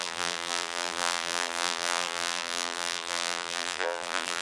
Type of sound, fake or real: fake